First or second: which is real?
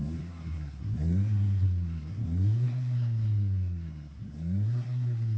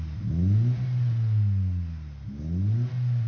second